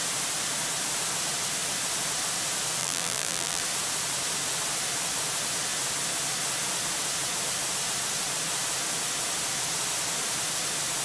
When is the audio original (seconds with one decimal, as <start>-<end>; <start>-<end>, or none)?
0.0-2.8; 3.6-11.0